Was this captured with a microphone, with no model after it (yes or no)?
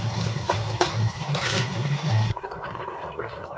no